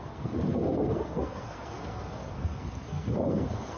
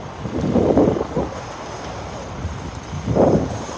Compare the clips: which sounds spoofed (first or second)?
first